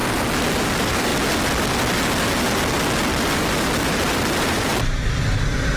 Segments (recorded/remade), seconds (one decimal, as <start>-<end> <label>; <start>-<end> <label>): 0.0-1.1 remade; 1.1-3.8 recorded; 3.8-4.7 remade; 4.7-5.8 recorded